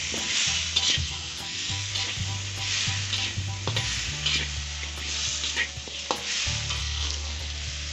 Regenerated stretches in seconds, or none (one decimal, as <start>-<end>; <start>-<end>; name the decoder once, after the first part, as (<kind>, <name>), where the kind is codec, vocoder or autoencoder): 1.0-1.9 (codec, SNAC); 6.8-7.4